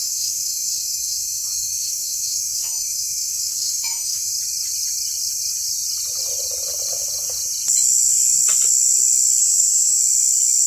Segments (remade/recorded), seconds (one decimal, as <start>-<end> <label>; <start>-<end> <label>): 0.0-4.3 remade; 4.3-9.4 recorded; 9.4-10.0 remade; 10.0-10.7 recorded